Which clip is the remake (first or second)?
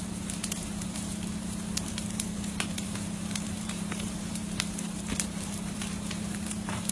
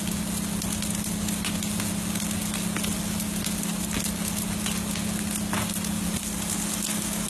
first